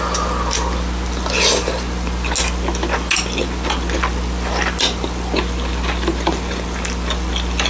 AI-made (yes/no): no